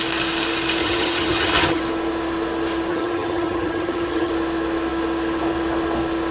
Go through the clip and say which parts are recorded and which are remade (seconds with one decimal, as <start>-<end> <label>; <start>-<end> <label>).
0.0-0.8 recorded; 0.8-1.8 remade; 1.8-2.9 recorded; 2.9-4.3 remade; 4.3-6.3 recorded